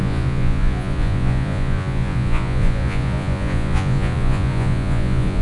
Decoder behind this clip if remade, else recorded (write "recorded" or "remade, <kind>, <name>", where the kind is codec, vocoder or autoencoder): remade, vocoder, Vocos